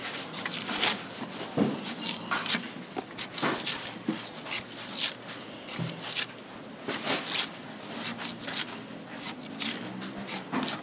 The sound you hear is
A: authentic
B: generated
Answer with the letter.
A